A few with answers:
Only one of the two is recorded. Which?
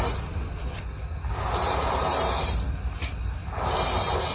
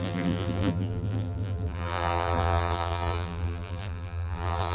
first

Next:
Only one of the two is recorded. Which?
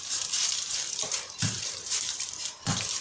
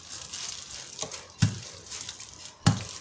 second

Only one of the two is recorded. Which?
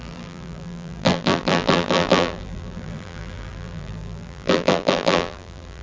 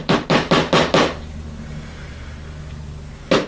second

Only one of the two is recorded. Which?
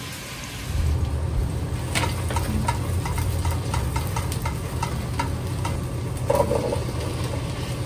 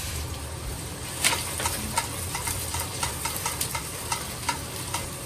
first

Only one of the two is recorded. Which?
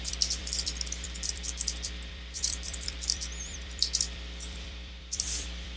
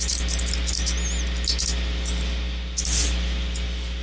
second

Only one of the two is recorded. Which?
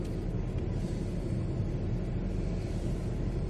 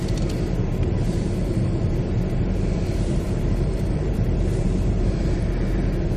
first